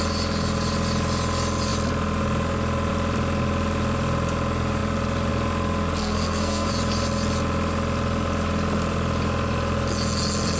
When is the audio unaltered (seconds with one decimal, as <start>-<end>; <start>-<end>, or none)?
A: 0.0-6.0; 6.7-10.6